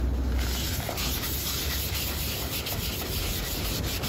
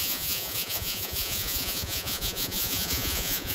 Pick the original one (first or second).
first